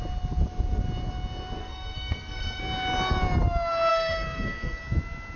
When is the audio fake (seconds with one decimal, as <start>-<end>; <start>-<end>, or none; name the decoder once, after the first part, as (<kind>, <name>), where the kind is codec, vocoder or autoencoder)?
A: 1.6-2.6 (codec, SNAC); 3.9-4.8